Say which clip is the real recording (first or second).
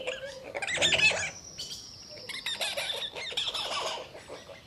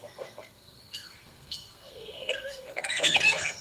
first